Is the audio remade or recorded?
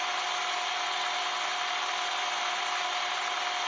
recorded